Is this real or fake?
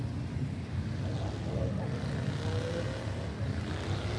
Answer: real